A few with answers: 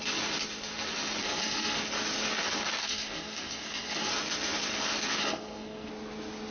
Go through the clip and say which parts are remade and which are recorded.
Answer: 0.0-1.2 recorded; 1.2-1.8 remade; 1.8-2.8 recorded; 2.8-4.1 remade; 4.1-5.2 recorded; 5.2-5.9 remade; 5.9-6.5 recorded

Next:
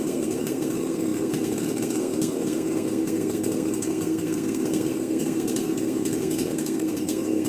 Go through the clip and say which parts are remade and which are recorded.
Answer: 0.0-7.5 remade

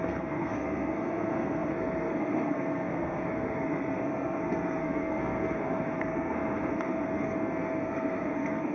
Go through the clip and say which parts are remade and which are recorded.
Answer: 0.0-8.7 remade

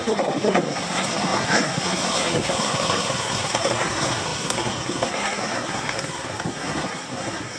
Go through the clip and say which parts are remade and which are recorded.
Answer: 0.0-7.6 remade